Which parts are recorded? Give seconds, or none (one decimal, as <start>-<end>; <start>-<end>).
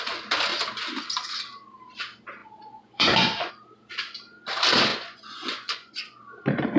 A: 0.0-2.4; 3.5-4.9; 6.2-6.8